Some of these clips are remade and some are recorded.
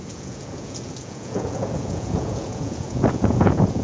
remade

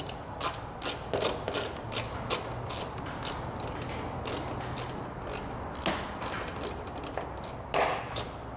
recorded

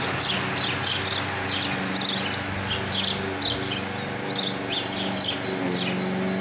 recorded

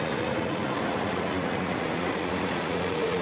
remade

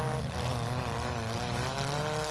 recorded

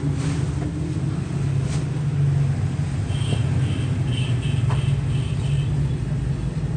recorded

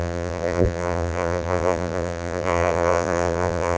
remade